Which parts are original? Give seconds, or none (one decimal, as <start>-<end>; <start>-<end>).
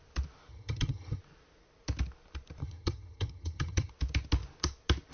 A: 0.0-0.5; 1.2-2.6; 3.9-5.1